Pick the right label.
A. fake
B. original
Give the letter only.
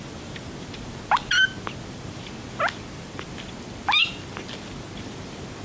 B